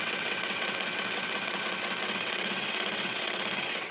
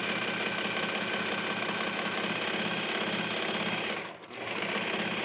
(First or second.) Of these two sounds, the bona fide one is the second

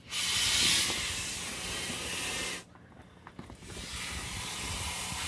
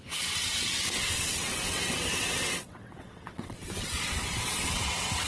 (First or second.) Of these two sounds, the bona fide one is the first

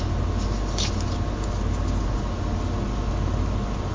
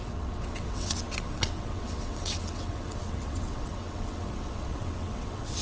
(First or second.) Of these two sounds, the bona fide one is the first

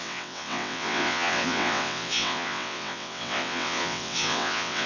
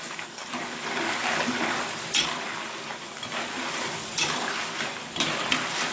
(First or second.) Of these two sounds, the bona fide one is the second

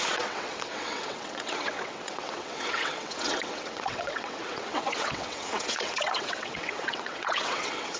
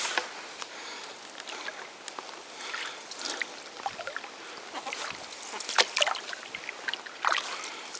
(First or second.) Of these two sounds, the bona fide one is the second